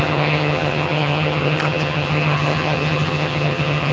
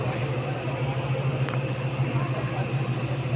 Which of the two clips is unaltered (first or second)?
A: second